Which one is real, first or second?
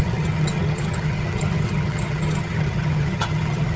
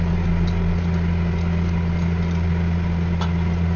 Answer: second